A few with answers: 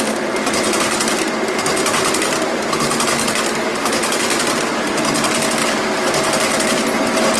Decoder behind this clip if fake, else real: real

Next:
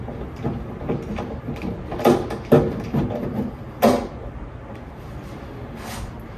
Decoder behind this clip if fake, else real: real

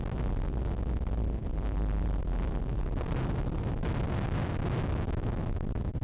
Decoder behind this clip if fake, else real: real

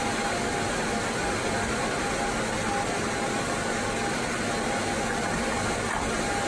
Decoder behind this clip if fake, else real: real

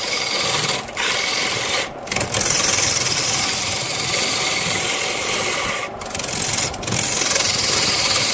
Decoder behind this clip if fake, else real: real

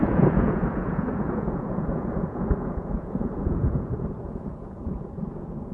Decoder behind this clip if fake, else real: fake, vocoder, Vocos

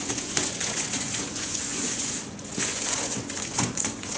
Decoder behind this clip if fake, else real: fake, vocoder, Vocos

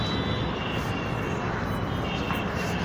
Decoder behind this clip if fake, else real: real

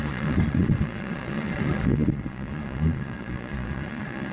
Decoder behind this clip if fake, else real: fake, vocoder, Vocos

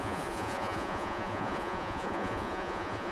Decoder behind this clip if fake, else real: fake, vocoder, Vocos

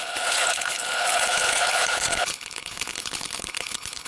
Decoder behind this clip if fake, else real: fake, codec, HILCodec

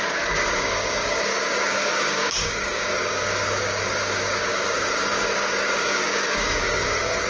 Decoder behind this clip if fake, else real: fake, codec, DAC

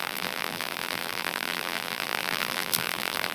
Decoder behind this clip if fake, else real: fake, vocoder, BigVGAN v2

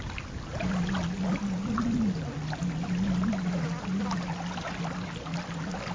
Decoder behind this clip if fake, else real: real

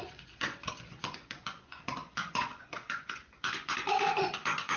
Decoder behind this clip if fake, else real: fake, vocoder, Vocos